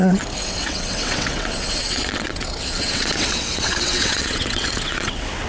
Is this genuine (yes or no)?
no